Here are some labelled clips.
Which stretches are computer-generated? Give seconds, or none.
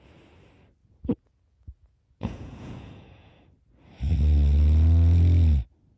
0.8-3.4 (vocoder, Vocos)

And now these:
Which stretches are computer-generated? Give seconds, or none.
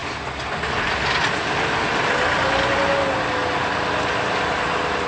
none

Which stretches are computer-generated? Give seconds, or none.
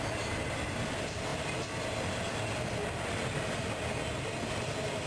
none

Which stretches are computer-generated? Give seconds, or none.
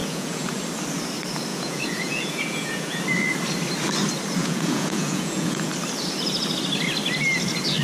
0.0-0.6 (vocoder, Vocos); 1.5-3.0; 4.4-5.7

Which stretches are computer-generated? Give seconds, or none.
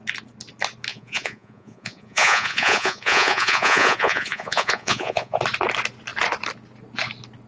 0.9-5.4 (vocoder, Vocos)